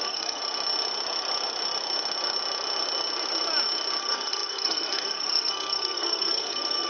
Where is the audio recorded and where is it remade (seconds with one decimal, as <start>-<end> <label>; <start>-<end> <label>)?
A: 0.0-0.4 remade; 0.4-4.0 recorded; 4.0-6.9 remade